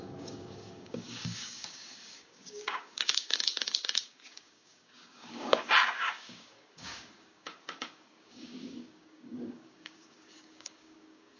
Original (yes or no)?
no